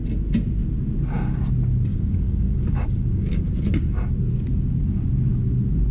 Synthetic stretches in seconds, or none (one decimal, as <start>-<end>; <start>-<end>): 1.9-3.4